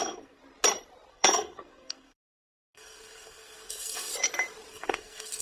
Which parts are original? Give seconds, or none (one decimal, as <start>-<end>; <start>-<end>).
0.4-1.1; 4.1-4.7